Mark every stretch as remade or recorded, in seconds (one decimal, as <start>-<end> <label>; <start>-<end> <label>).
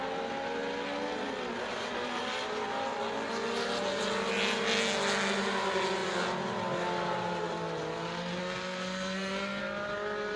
0.0-8.4 recorded; 8.4-9.6 remade; 9.6-10.4 recorded